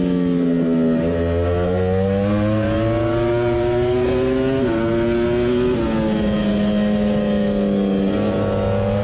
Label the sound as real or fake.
real